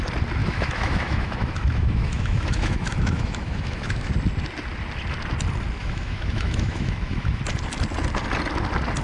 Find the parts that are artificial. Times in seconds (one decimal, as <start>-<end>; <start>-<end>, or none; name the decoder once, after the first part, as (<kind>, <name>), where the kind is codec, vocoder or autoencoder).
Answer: 0.4-4.1 (autoencoder, DAC-VAE); 5.8-7.4